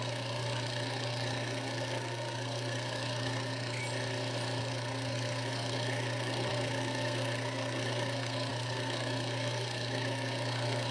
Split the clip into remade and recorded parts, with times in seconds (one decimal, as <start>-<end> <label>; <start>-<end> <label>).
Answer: 0.0-3.8 remade; 3.8-4.6 recorded; 4.6-10.9 remade